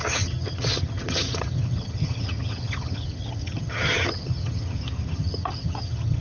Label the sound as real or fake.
fake